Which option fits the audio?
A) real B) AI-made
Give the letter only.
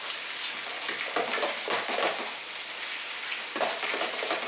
A